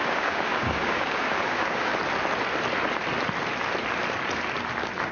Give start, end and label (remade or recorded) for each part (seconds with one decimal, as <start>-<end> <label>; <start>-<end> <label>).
0.0-1.9 remade; 1.9-5.1 recorded